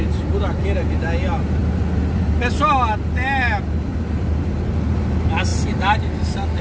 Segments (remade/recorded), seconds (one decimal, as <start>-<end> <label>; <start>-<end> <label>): 0.0-6.6 recorded